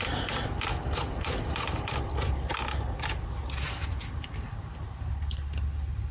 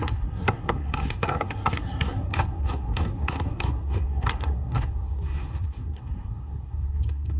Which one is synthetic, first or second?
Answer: second